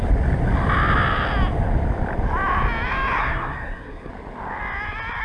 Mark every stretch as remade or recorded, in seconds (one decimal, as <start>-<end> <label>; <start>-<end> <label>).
0.0-3.2 recorded; 3.2-4.1 remade; 4.1-5.2 recorded